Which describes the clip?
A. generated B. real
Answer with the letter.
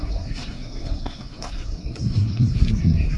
A